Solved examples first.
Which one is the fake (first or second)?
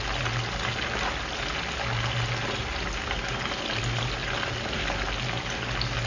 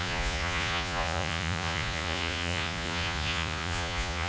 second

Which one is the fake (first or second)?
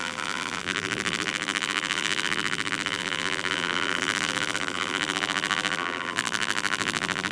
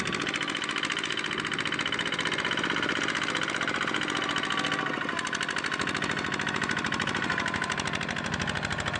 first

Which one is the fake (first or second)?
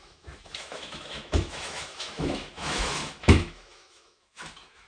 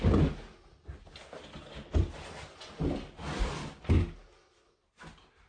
first